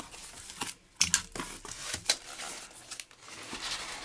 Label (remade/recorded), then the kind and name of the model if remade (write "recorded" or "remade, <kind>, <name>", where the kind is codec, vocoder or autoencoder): recorded